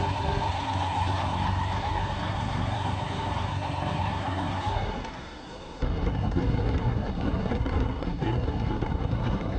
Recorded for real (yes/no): no